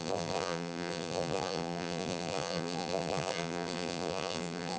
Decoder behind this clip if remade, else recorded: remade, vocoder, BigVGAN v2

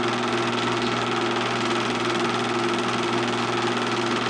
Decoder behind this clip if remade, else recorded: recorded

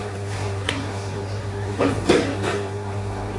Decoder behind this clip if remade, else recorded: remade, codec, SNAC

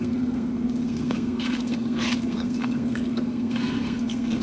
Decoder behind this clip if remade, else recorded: remade, codec, SNAC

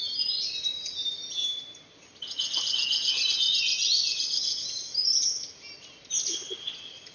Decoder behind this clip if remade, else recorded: recorded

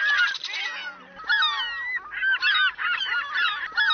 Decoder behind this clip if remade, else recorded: recorded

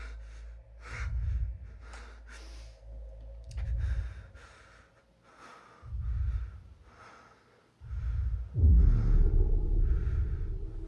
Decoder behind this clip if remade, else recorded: recorded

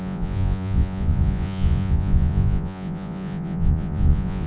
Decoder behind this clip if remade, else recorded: remade, vocoder, Vocos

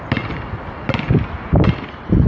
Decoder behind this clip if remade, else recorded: recorded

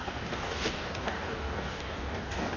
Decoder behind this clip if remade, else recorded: remade, codec, DAC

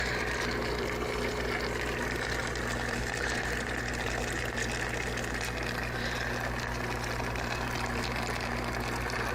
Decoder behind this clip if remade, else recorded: recorded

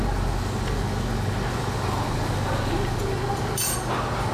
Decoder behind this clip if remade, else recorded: recorded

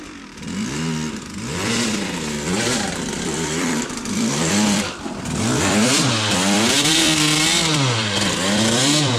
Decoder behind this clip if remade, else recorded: remade, vocoder, BigVGAN v2